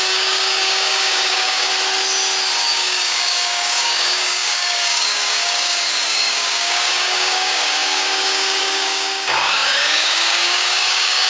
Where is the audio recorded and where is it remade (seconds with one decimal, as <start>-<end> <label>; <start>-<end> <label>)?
0.0-1.7 remade; 1.7-2.6 recorded; 2.6-11.3 remade